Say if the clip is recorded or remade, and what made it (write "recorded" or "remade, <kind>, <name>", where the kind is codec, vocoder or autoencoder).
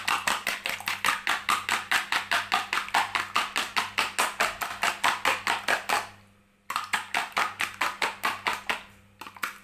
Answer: recorded